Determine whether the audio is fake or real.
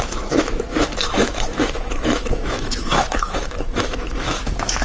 fake